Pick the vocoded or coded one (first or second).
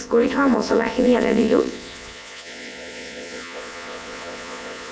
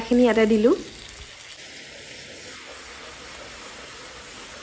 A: first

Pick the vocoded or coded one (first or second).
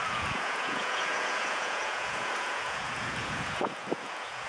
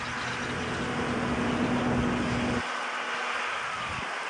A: first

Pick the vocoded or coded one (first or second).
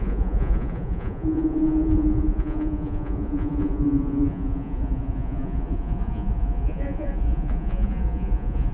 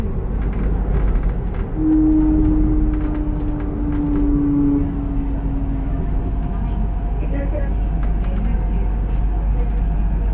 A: first